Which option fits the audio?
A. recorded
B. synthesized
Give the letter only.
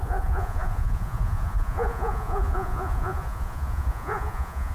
B